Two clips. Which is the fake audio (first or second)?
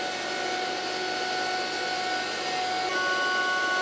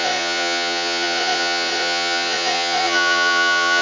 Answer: second